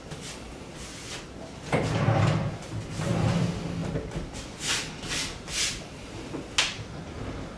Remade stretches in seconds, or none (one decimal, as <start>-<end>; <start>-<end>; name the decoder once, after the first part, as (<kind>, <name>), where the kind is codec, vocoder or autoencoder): none